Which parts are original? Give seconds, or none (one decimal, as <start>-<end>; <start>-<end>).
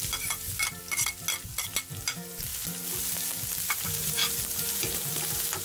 0.8-2.0; 2.5-3.5